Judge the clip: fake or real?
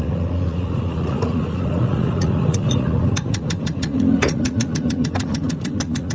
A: fake